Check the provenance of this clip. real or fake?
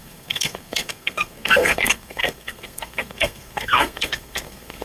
fake